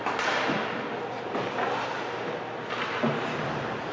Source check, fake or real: real